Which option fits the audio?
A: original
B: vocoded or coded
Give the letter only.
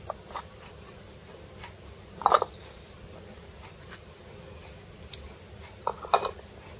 A